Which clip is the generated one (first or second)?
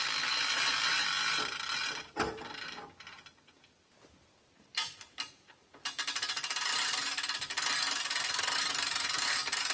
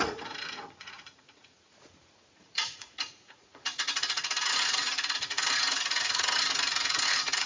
second